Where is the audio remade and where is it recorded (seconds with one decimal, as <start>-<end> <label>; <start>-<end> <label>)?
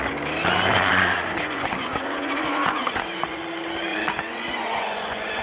0.0-0.9 recorded; 0.9-3.4 remade; 3.4-3.9 recorded; 3.9-5.4 remade